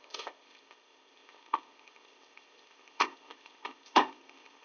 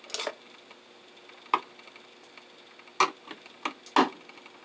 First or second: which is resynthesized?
first